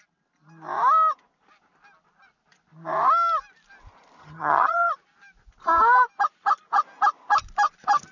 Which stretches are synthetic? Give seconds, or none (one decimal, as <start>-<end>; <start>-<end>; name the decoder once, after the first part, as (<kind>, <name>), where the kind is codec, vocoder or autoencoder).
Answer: 4.2-4.9 (vocoder, HiFi-GAN)